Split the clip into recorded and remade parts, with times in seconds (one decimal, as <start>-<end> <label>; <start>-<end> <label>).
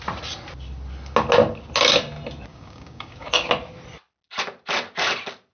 0.0-2.5 recorded; 2.5-3.5 remade; 3.5-5.5 recorded